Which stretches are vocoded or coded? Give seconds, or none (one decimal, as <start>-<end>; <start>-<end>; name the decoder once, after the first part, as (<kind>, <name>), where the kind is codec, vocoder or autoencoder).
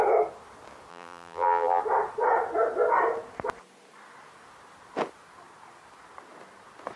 0.9-1.8 (vocoder, BigVGAN v2)